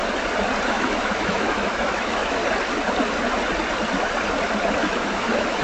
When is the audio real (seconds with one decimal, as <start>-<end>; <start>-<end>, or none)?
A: 0.0-0.6; 2.4-4.8